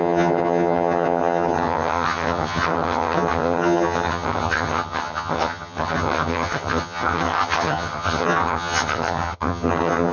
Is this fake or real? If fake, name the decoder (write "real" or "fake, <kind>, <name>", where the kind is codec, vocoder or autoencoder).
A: fake, vocoder, HiFi-GAN